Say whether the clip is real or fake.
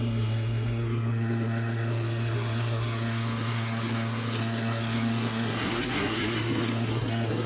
fake